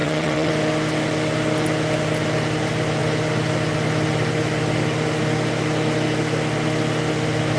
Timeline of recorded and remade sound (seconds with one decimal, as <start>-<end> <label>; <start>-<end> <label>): 0.0-0.5 remade; 0.5-7.6 recorded